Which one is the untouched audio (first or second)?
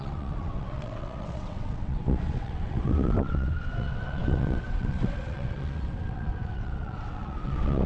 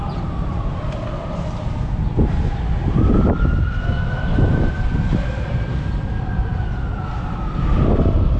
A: second